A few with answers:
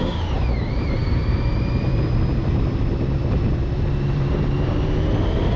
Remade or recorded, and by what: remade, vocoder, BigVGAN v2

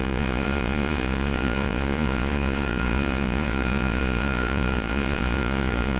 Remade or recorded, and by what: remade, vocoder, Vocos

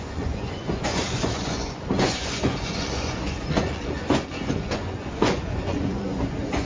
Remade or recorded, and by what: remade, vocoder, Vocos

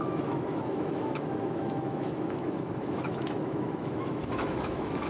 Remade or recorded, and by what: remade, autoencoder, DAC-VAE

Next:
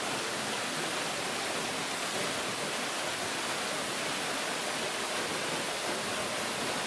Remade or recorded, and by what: recorded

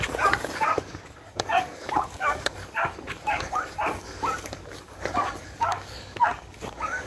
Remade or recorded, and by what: remade, codec, DAC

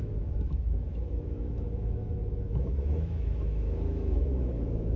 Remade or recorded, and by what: remade, autoencoder, DAC-VAE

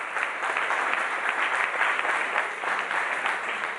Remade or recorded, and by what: recorded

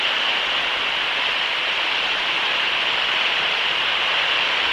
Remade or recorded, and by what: remade, vocoder, BigVGAN v2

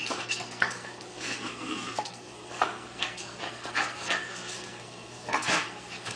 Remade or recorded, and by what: remade, codec, SNAC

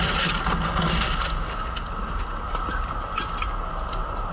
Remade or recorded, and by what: recorded